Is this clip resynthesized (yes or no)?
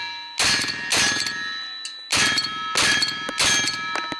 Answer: no